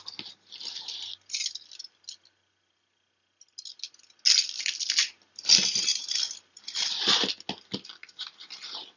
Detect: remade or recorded recorded